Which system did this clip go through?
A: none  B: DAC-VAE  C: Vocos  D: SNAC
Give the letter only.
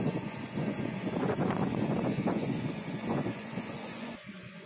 C